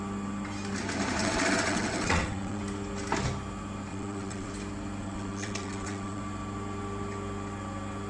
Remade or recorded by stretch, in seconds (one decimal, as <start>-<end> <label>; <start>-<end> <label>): 0.0-1.2 recorded; 1.2-2.6 remade; 2.6-3.9 recorded; 3.9-4.5 remade; 4.5-5.0 recorded; 5.0-6.2 remade; 6.2-8.1 recorded